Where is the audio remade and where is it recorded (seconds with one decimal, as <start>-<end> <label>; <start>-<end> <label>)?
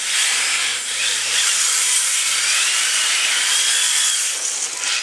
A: 0.0-0.7 recorded; 0.7-3.7 remade; 3.7-5.0 recorded